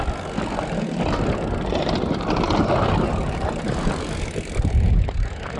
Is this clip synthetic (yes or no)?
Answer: no